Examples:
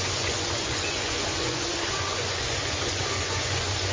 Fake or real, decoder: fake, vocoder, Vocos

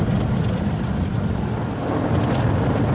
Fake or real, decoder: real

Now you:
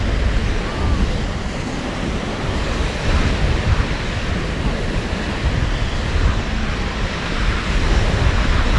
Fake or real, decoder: real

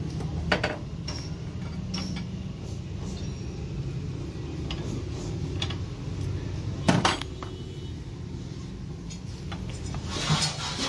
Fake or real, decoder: real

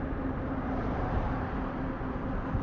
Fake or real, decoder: real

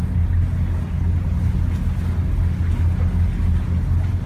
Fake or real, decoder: real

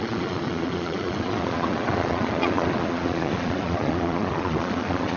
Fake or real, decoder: fake, vocoder, Vocos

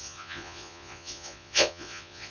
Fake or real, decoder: fake, vocoder, Vocos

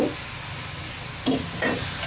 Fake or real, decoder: real